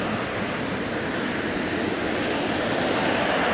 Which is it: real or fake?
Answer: real